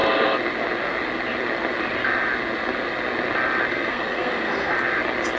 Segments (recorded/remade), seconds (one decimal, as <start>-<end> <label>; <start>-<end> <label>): 0.0-3.7 recorded; 3.7-4.7 remade; 4.7-5.4 recorded